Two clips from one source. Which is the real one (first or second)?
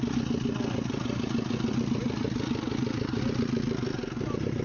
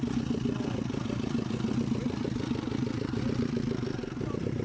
first